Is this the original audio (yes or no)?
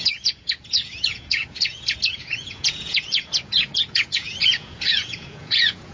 no